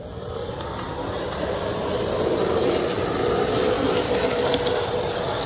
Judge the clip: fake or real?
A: fake